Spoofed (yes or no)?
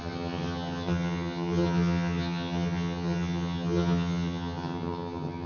yes